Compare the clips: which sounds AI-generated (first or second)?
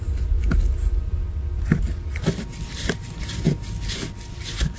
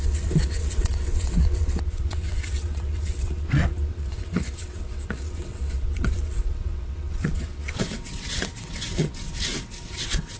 second